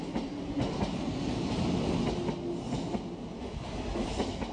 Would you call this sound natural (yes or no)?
yes